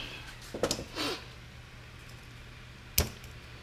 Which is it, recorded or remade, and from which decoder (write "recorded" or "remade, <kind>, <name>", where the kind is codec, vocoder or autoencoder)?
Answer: recorded